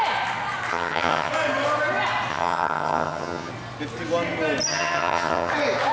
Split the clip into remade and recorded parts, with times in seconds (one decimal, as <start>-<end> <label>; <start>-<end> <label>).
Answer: 0.0-0.7 recorded; 0.7-1.3 remade; 1.3-2.3 recorded; 2.3-3.5 remade; 3.5-4.7 recorded; 4.7-5.5 remade; 5.5-5.9 recorded